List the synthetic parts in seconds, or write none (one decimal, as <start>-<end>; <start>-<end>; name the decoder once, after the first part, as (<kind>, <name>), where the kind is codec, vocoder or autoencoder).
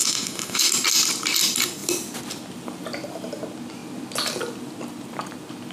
0.0-0.7 (autoencoder, DAC-VAE)